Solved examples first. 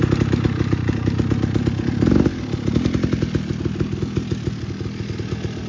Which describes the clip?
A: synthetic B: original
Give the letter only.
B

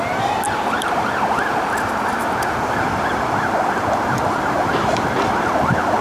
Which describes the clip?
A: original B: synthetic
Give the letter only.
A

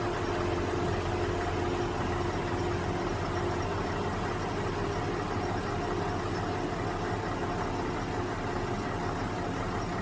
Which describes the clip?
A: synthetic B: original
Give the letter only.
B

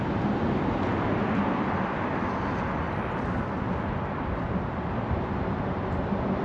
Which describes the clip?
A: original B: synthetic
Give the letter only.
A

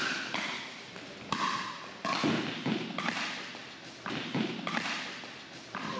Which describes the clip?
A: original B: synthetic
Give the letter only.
A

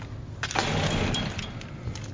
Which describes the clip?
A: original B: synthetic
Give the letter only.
A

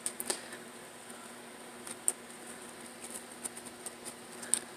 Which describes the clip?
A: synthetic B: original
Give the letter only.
B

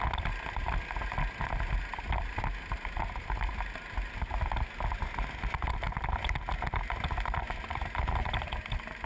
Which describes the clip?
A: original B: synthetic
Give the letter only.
A